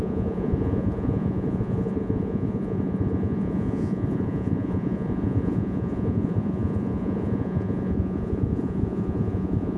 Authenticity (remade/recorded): remade